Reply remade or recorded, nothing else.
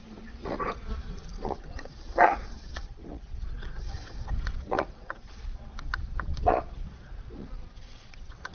remade